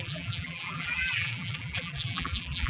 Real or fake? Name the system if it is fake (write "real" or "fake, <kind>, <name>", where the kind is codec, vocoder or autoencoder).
fake, vocoder, BigVGAN v2